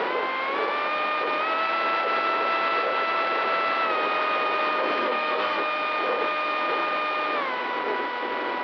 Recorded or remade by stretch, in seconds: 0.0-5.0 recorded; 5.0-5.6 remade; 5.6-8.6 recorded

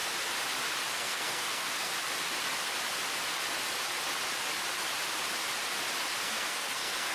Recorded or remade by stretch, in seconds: 0.0-0.9 recorded; 0.9-1.9 remade; 1.9-6.2 recorded; 6.2-7.1 remade

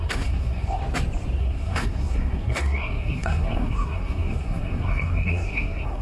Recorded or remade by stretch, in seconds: 0.0-0.8 remade; 0.8-1.4 recorded; 1.4-6.0 remade

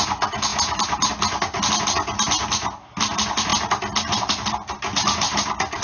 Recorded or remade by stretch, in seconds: 0.0-5.8 recorded